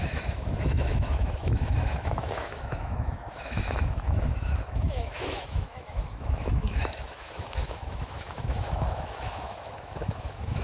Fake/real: fake